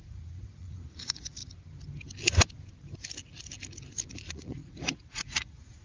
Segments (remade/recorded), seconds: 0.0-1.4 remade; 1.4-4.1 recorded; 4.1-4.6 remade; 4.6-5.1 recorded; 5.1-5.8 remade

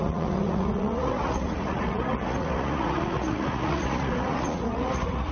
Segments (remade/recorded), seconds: 0.0-5.3 remade

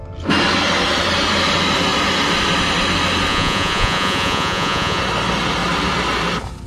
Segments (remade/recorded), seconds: 0.0-3.3 recorded; 3.3-5.0 remade; 5.0-6.7 recorded

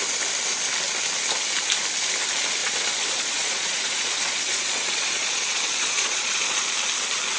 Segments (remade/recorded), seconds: 0.0-2.6 recorded; 2.6-6.7 remade; 6.7-7.4 recorded

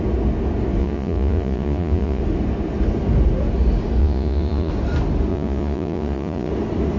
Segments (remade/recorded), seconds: 0.0-0.8 recorded; 0.8-2.2 remade; 2.2-4.0 recorded; 4.0-4.7 remade; 4.7-5.3 recorded; 5.3-6.5 remade; 6.5-7.0 recorded